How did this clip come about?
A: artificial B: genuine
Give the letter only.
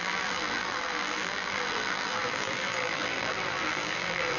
A